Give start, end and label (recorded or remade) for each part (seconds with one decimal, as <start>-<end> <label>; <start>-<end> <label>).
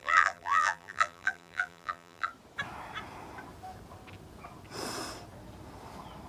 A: 0.0-2.3 remade; 2.3-6.3 recorded